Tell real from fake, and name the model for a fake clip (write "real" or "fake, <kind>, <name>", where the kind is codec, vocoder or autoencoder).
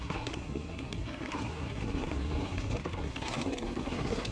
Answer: fake, codec, SNAC